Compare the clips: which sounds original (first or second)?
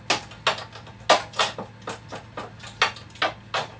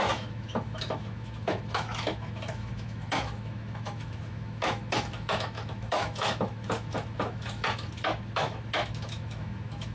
first